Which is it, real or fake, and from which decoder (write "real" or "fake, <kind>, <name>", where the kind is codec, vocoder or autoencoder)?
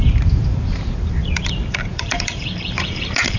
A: fake, vocoder, BigVGAN v2